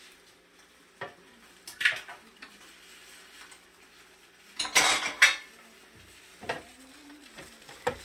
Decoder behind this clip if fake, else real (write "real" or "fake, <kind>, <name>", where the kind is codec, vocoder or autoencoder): real